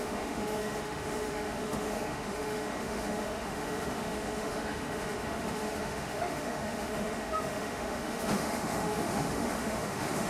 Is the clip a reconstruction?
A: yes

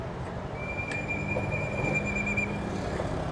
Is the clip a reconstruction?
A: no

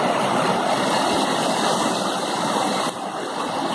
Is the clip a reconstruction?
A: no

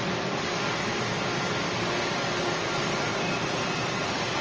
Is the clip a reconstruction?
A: no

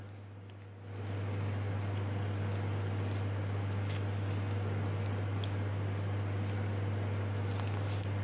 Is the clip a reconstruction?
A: no